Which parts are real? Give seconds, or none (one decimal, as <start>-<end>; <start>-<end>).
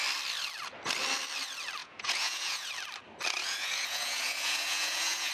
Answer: 0.0-1.8; 2.7-3.4